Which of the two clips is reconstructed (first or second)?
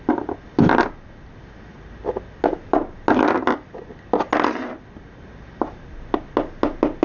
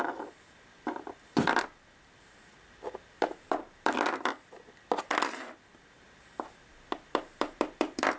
second